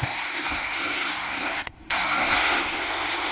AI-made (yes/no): yes